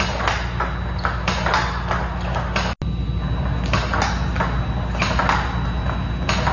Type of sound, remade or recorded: recorded